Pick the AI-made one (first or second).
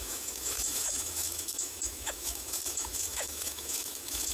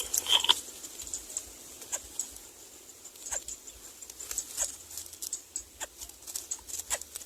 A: first